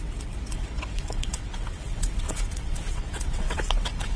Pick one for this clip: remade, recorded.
remade